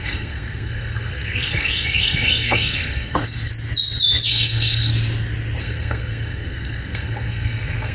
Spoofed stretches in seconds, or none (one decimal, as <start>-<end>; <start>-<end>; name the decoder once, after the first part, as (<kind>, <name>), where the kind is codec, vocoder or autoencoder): 0.0-3.5 (codec, SNAC); 4.3-4.9; 5.6-7.9